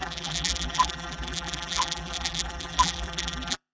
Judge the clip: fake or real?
fake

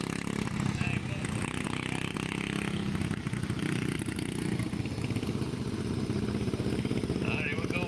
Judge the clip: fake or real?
real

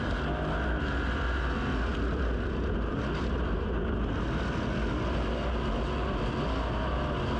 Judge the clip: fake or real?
real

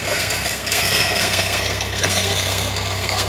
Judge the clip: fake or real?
fake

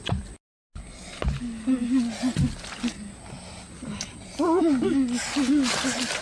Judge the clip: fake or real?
real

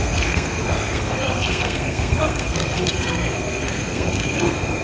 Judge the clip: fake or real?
fake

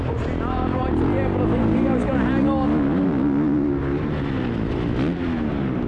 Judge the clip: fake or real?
real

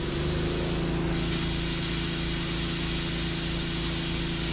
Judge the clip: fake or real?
real